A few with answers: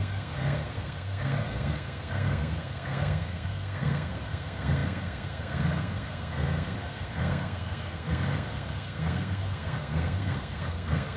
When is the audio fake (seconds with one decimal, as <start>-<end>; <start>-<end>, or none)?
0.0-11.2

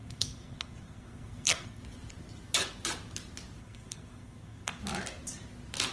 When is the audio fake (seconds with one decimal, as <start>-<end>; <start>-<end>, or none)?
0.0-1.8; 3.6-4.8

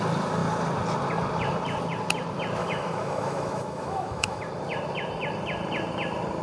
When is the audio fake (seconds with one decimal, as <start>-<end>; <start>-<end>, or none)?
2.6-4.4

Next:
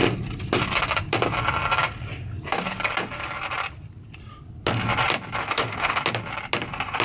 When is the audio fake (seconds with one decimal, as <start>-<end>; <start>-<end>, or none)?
5.4-6.0